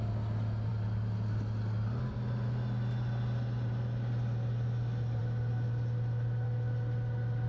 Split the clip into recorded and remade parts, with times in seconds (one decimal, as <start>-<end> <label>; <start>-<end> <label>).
0.0-7.5 recorded